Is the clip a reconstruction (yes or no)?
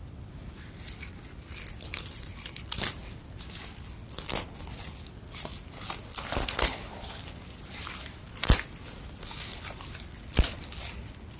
yes